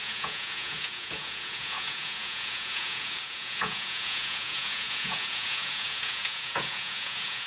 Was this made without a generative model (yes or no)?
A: no